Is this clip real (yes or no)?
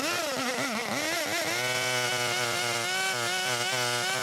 yes